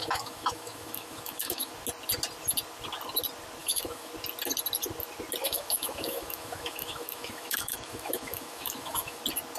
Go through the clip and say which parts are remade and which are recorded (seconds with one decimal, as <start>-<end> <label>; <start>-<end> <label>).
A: 0.0-1.7 remade; 1.7-3.6 recorded; 3.6-4.1 remade; 4.1-5.4 recorded; 5.4-9.2 remade; 9.2-9.6 recorded